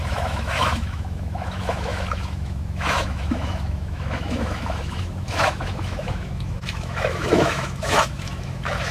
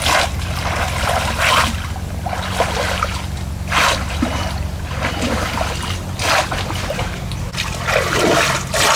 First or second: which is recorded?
second